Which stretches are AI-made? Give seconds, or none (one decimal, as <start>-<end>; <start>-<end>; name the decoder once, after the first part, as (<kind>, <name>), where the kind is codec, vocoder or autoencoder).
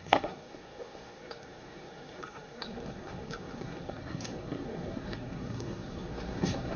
0.0-6.8 (codec, SNAC)